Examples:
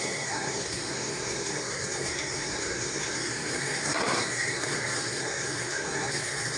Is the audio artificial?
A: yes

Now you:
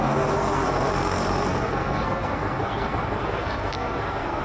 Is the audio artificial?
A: yes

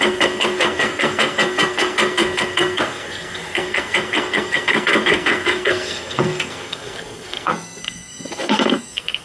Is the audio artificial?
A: yes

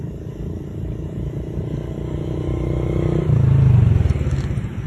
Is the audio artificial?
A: no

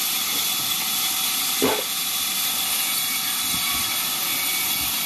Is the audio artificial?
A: no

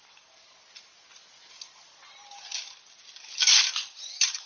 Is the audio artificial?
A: no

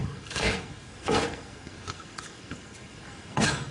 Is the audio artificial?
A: yes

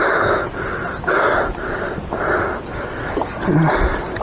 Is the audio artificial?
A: no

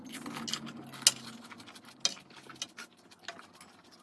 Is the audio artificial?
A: no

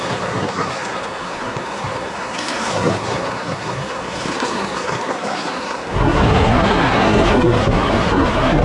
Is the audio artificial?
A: yes